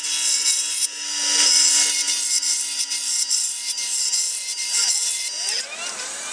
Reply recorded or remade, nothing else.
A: recorded